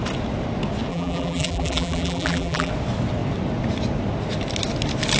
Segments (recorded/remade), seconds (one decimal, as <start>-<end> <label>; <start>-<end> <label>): 0.0-0.9 recorded; 0.9-2.7 remade; 2.7-5.2 recorded